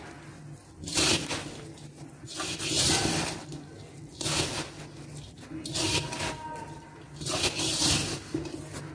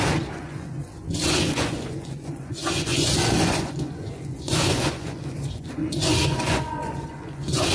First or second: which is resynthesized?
second